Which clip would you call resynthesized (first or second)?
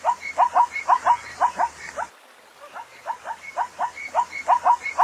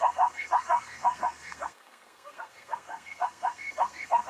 second